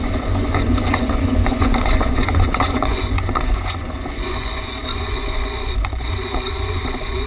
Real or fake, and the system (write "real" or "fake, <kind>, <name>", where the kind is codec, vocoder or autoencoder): fake, vocoder, Vocos